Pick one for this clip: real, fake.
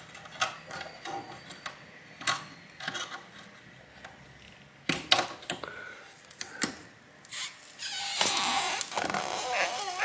real